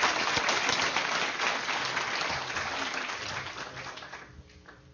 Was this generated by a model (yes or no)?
no